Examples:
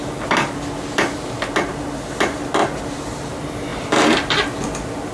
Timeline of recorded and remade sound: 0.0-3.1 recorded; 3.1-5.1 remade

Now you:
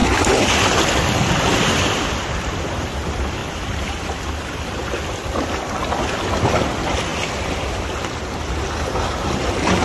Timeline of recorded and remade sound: 0.0-2.0 remade; 2.0-9.8 recorded

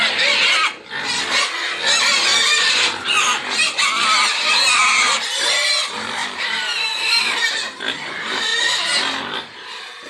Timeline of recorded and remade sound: 0.0-2.3 recorded; 2.3-3.1 remade; 3.1-6.2 recorded; 6.2-7.8 remade; 7.8-10.1 recorded

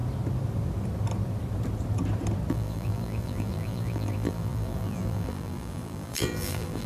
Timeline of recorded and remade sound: 0.0-2.5 recorded; 2.5-6.9 remade

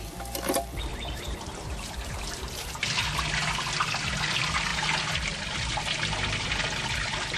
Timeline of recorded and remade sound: 0.0-0.9 recorded; 0.9-2.8 remade; 2.8-7.4 recorded